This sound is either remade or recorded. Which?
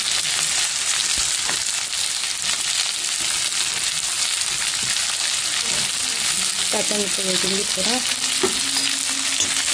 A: recorded